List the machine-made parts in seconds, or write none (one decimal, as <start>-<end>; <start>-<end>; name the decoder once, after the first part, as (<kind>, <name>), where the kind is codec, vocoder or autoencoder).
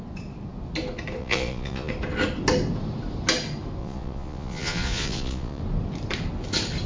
1.2-1.9 (vocoder, Vocos); 3.8-5.6